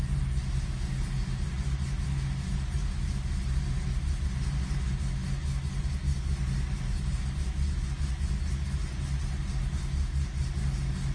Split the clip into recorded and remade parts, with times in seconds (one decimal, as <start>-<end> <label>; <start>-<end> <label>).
0.0-11.1 recorded